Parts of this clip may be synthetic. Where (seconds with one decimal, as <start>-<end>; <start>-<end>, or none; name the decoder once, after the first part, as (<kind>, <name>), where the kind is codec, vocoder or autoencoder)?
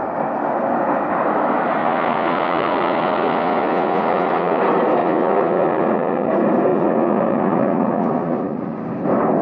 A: 1.8-4.6 (vocoder, Vocos); 5.0-6.3; 6.7-8.8